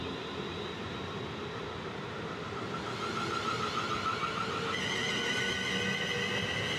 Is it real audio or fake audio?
real